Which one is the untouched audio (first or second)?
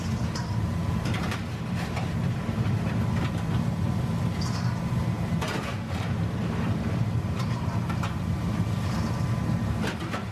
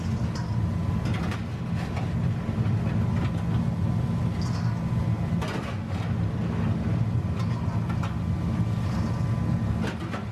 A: second